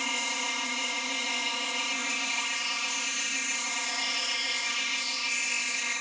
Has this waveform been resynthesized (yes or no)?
yes